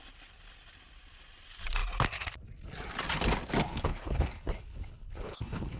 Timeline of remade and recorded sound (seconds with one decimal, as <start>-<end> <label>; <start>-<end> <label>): 0.0-3.7 recorded; 3.7-5.8 remade